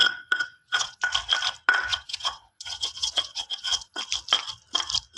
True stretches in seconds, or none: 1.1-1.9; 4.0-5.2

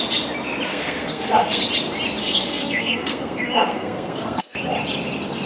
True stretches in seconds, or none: 0.0-0.7; 1.6-2.2; 4.6-5.5

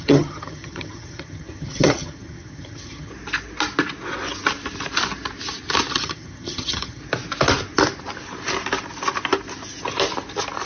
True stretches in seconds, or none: 3.1-5.9; 7.0-10.7

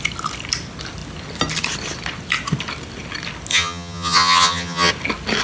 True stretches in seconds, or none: 0.0-3.5; 4.9-5.4

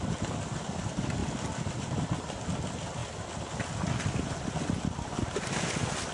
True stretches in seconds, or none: 0.0-6.1